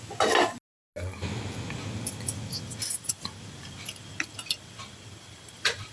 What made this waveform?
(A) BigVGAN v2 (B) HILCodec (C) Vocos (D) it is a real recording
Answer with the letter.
D